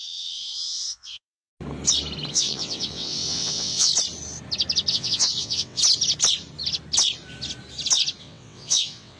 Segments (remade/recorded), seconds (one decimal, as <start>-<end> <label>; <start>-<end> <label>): 0.0-1.5 remade; 1.5-2.3 recorded; 2.3-3.9 remade; 3.9-4.9 recorded; 4.9-5.8 remade; 5.8-8.2 recorded; 8.2-9.2 remade